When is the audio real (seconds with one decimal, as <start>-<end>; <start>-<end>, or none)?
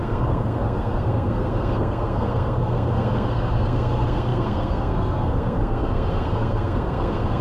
none